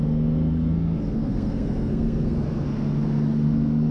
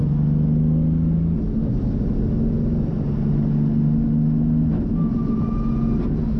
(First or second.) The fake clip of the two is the first